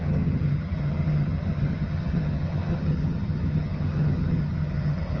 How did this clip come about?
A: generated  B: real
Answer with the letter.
A